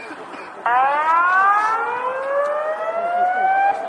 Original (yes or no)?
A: yes